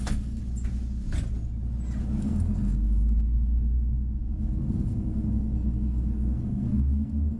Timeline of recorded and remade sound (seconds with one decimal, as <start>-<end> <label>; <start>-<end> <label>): 0.0-0.4 remade; 0.4-2.2 recorded; 2.2-7.4 remade